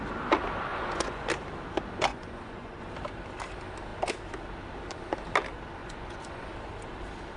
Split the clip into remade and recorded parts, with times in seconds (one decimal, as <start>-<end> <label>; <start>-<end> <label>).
0.0-0.7 recorded; 0.7-1.3 remade; 1.3-2.1 recorded; 2.1-2.8 remade; 2.8-5.8 recorded; 5.8-6.5 remade; 6.5-7.4 recorded